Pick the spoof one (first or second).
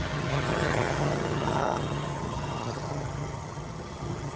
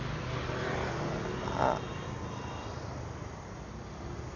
first